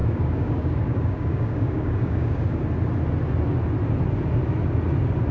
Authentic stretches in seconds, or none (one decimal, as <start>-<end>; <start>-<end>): 2.6-5.3